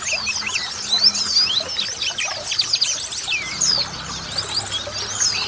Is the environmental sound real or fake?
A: real